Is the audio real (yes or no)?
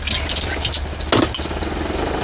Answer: yes